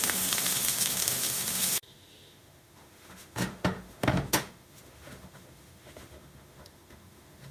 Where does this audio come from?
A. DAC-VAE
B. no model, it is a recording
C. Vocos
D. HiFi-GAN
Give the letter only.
A